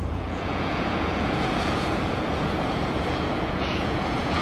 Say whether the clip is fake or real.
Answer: fake